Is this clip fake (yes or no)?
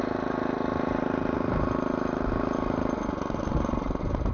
no